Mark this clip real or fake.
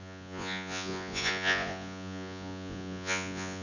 fake